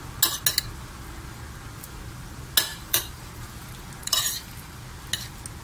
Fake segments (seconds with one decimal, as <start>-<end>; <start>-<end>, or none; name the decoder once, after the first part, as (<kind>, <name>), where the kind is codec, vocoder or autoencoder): 2.7-3.3 (vocoder, BigVGAN v2); 4.0-4.8